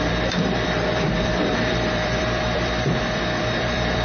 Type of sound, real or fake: fake